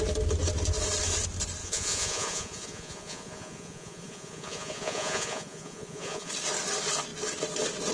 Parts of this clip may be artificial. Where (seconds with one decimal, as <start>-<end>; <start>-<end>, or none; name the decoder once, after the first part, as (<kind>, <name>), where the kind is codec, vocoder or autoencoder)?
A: 1.6-6.3 (vocoder, Vocos)